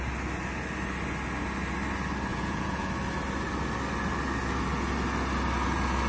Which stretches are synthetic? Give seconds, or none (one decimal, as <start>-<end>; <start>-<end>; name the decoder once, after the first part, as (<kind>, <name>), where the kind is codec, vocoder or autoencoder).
2.3-2.9 (vocoder, Vocos)